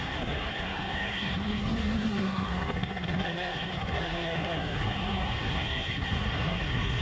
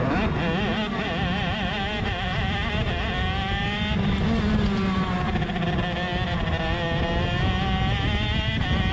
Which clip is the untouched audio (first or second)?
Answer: second